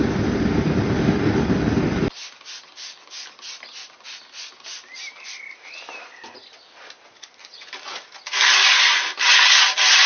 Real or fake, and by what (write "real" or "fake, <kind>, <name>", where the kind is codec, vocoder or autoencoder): real